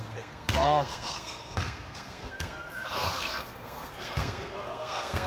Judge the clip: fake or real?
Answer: fake